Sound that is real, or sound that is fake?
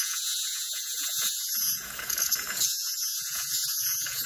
fake